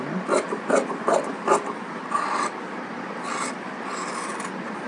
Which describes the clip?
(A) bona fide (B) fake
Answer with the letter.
B